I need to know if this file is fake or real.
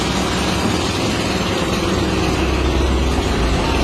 real